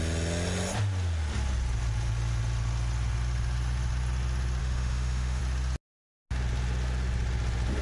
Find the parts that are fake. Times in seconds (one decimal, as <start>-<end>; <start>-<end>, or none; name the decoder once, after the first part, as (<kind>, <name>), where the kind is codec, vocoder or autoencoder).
4.6-5.4 (autoencoder, DAC-VAE)